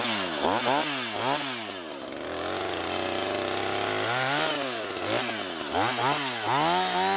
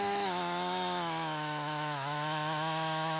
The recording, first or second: first